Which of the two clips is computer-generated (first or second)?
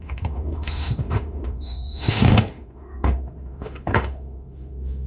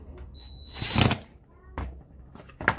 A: first